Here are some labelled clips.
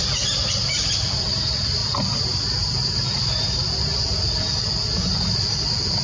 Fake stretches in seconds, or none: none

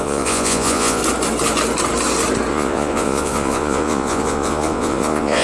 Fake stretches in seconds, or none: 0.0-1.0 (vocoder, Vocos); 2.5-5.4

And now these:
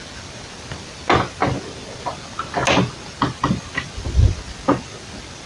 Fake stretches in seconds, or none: none